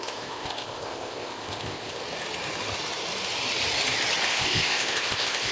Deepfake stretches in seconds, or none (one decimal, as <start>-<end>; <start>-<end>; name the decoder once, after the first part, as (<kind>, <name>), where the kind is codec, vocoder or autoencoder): 0.0-2.0 (codec, ZipCodec); 4.3-5.5